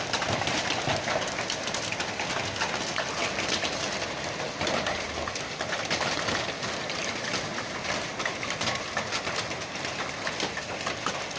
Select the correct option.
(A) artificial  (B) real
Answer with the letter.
B